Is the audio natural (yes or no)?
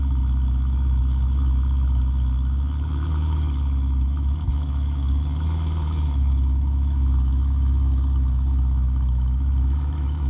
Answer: no